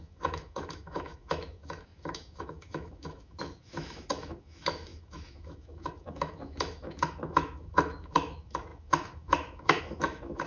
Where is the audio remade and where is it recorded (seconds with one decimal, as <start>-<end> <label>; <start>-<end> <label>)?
0.0-10.5 remade

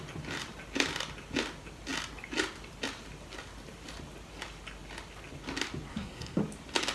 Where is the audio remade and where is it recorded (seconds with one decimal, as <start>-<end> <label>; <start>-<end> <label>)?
0.0-5.9 recorded; 5.9-6.4 remade; 6.4-6.9 recorded

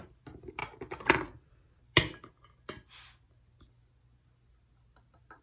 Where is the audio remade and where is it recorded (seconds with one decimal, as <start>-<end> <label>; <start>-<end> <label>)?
0.0-5.4 recorded

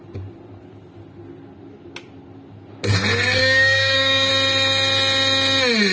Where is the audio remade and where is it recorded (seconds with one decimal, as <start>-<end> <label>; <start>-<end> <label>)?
0.0-3.4 recorded; 3.4-4.3 remade; 4.3-5.9 recorded

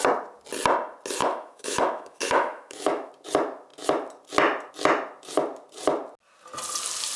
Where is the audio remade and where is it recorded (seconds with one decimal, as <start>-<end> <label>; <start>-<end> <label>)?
0.0-1.2 recorded; 1.2-3.1 remade; 3.1-7.2 recorded

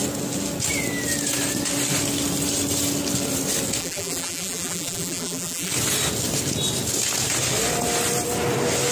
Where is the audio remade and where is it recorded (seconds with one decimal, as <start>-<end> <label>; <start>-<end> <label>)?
0.0-3.8 recorded; 3.8-5.7 remade; 5.7-8.9 recorded

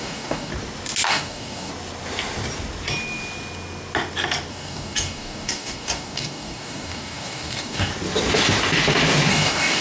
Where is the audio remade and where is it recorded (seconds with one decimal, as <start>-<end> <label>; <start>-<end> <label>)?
0.0-0.5 remade; 0.5-1.1 recorded; 1.1-1.7 remade; 1.7-4.5 recorded; 4.5-7.9 remade; 7.9-9.3 recorded; 9.3-9.8 remade